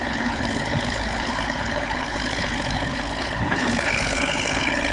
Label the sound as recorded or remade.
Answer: remade